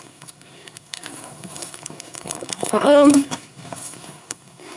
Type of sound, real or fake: fake